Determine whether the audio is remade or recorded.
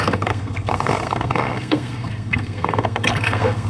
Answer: remade